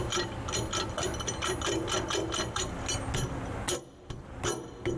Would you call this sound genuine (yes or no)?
yes